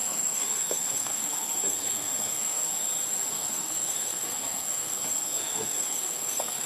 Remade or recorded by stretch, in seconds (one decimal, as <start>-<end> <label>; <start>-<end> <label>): 0.0-2.7 remade; 2.7-3.3 recorded; 3.3-6.7 remade